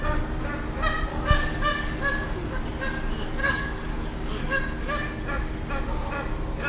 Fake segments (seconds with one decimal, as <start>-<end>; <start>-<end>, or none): 1.1-2.6; 3.4-4.6